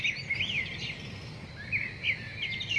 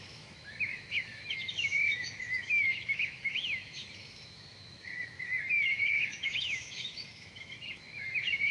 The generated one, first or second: second